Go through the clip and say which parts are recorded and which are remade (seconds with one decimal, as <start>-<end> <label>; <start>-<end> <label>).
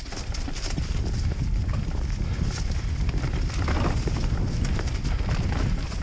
0.0-6.0 remade